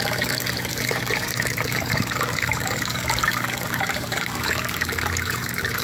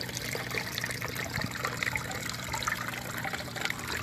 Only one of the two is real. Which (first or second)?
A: second